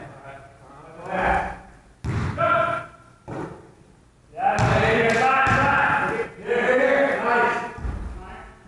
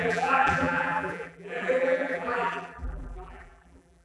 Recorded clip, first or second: first